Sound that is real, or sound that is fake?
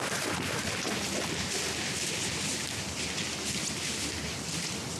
real